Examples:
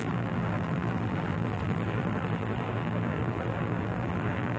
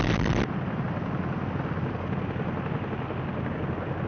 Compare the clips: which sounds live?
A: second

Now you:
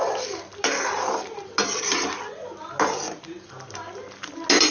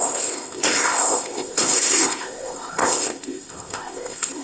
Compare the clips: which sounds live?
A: first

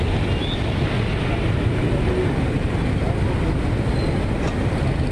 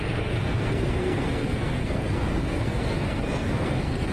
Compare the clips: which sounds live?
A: first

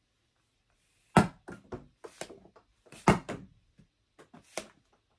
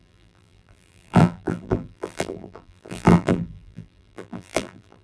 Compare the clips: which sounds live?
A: first